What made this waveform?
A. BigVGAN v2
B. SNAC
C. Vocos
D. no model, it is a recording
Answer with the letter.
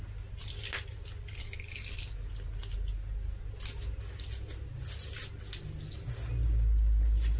D